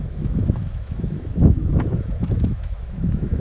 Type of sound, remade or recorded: remade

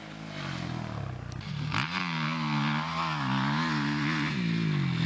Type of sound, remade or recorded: recorded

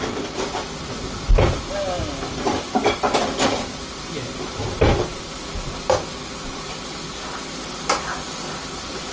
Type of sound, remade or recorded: recorded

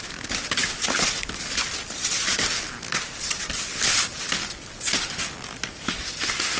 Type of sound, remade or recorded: recorded